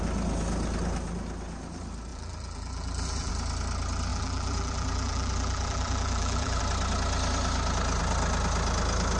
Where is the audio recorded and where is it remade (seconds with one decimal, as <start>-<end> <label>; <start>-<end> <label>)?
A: 0.0-2.1 recorded; 2.1-3.3 remade; 3.3-4.1 recorded; 4.1-6.6 remade; 6.6-9.2 recorded

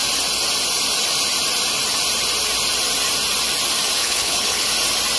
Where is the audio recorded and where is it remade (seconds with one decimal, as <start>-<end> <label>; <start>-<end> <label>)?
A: 0.0-4.0 recorded; 4.0-4.7 remade; 4.7-5.2 recorded

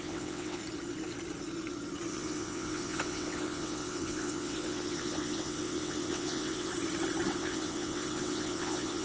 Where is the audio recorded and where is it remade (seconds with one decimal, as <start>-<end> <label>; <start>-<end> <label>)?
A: 0.0-0.6 remade; 0.6-2.1 recorded; 2.1-6.7 remade; 6.7-7.3 recorded; 7.3-9.0 remade

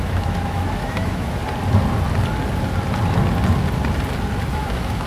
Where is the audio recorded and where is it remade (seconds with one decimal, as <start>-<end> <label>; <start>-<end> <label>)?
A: 0.0-1.4 remade; 1.4-4.5 recorded; 4.5-5.1 remade